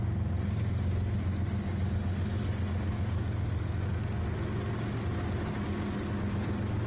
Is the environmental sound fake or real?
real